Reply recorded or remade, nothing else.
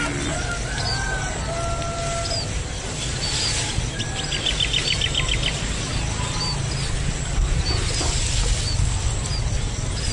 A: recorded